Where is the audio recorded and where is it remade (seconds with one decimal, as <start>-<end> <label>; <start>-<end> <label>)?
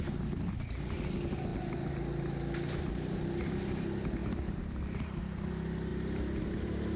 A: 0.0-4.2 recorded; 4.2-5.4 remade; 5.4-7.0 recorded